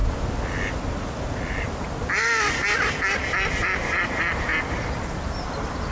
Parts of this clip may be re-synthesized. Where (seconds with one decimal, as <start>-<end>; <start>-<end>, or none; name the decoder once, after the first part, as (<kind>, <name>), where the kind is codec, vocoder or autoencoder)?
none